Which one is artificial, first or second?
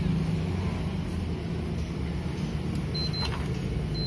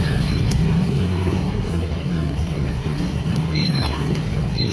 second